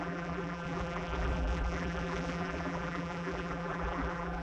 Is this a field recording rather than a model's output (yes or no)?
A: no